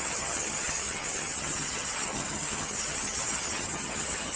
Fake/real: fake